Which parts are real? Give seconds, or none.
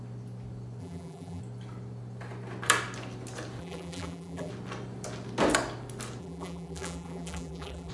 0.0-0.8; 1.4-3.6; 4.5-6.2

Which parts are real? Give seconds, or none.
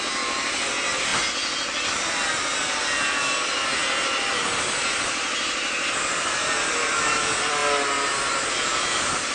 1.1-2.2; 7.6-8.3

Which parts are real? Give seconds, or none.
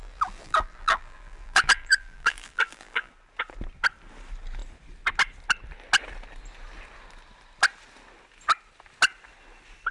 3.1-9.9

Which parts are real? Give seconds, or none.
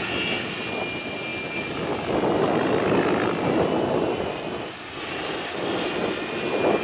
0.0-6.8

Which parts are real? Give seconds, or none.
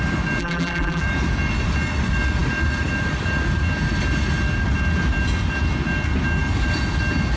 0.0-0.4; 1.0-7.4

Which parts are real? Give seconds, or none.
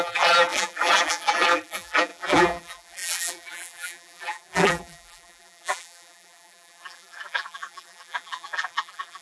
none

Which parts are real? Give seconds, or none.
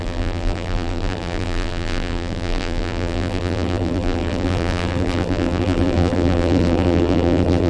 none